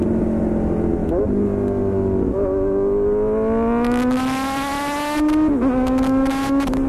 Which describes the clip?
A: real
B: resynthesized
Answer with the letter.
A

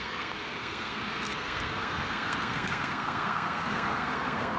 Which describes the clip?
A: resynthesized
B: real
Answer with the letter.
A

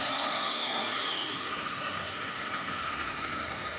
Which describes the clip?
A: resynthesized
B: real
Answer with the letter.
A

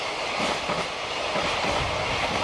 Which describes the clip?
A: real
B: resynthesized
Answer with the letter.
A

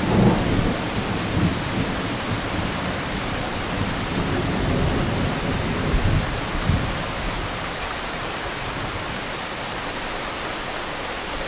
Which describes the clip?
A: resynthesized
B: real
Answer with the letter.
B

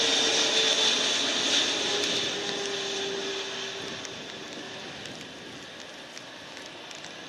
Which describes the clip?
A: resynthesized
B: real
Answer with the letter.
B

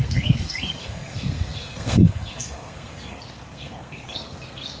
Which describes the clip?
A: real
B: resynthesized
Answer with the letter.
B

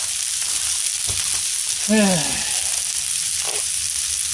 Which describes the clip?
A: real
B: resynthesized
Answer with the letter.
A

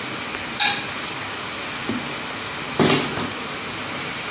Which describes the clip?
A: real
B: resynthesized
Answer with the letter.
A